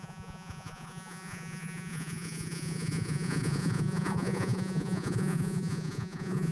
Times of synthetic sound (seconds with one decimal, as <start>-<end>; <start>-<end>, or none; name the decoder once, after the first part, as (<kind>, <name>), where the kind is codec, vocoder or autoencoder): 0.0-6.5 (vocoder, Vocos)